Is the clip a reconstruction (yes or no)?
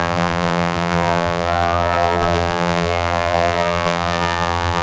yes